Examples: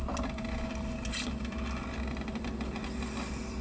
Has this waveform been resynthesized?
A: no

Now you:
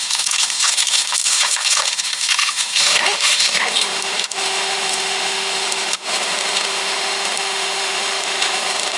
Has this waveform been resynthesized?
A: yes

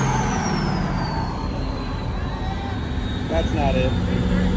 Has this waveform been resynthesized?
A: no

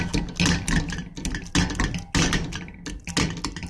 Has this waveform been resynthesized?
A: no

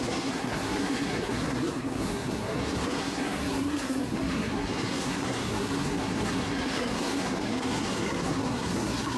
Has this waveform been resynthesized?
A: yes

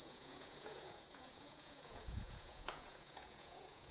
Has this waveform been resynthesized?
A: yes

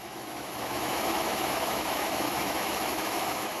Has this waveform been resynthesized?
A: yes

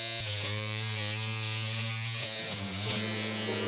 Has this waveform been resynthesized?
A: yes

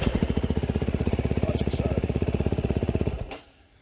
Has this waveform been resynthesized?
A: yes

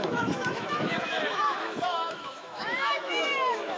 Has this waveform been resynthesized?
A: yes